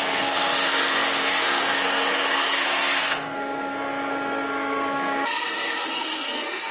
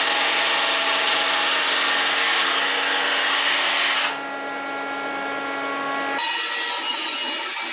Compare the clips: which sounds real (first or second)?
second